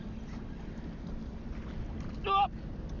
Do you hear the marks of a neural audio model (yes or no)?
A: no